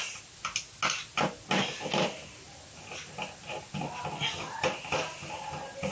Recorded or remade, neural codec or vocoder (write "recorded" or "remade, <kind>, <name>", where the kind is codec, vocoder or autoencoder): recorded